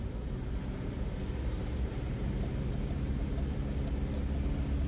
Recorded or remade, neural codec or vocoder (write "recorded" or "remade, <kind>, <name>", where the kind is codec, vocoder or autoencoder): recorded